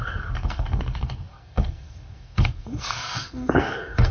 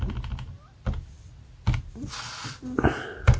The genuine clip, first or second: second